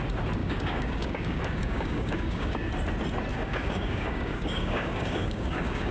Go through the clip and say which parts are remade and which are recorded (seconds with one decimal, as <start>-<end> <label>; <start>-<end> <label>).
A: 0.0-0.4 recorded; 0.4-2.7 remade; 2.7-3.3 recorded; 3.3-5.9 remade